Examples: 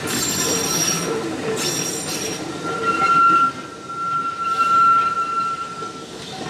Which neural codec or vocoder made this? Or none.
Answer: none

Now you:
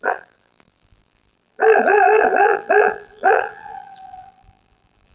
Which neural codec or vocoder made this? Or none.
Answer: vocoder, BigVGAN v2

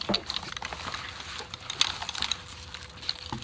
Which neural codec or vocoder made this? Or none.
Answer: none